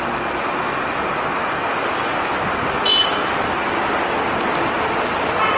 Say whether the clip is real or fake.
real